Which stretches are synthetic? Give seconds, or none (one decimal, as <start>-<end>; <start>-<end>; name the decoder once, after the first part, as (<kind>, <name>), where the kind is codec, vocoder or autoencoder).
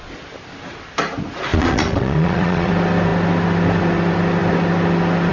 1.5-2.7 (vocoder, Vocos)